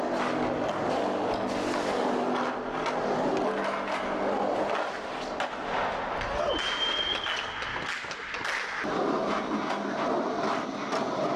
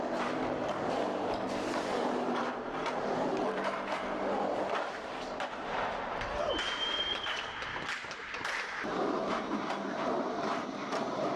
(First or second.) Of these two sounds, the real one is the first